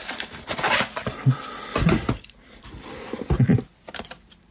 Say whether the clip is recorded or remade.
remade